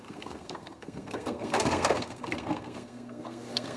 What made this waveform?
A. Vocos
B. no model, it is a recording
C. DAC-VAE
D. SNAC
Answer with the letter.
D